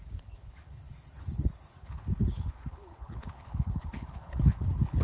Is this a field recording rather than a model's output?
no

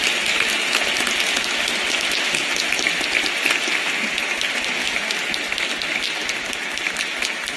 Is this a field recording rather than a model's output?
yes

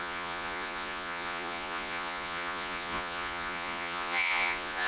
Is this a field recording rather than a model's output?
no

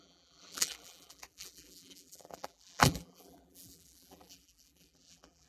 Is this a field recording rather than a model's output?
no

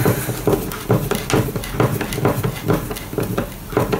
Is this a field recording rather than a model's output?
yes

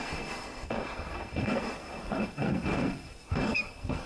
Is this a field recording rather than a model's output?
no